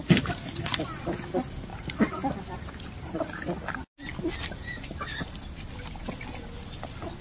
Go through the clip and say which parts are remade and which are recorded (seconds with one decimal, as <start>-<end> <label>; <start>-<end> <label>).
0.0-7.2 recorded